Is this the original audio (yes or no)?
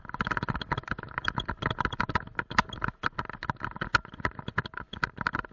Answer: yes